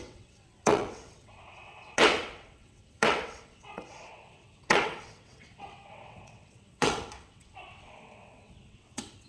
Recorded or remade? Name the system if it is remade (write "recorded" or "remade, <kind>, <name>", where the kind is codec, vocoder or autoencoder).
remade, vocoder, WaveNeXt